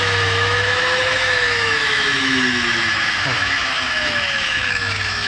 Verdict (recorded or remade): remade